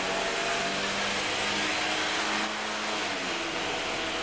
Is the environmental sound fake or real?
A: real